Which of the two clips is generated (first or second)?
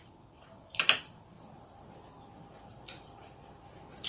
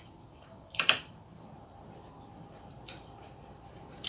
second